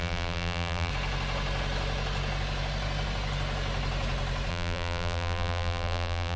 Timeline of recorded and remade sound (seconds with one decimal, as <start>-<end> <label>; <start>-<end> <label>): 0.0-0.9 remade; 0.9-4.5 recorded; 4.5-6.4 remade